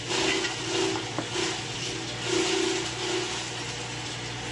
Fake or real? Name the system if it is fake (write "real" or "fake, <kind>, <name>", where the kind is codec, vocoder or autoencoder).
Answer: real